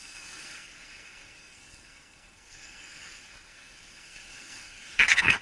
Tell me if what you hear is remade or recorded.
remade